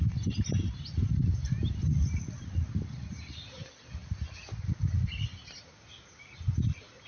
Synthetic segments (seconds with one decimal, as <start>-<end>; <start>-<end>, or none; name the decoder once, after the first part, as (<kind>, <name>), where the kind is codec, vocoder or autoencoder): none